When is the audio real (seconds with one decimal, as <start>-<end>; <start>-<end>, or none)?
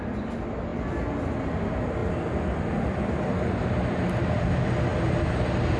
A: 0.0-5.8